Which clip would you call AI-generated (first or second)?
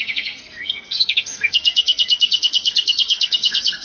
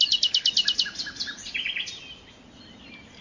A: first